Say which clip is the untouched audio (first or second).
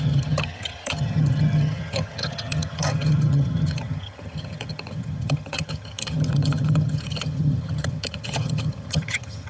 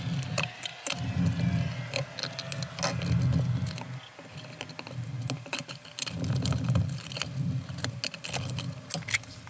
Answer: second